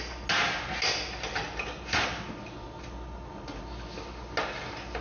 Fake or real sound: real